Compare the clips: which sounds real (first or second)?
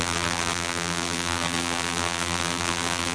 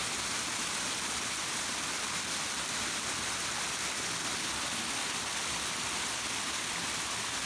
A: second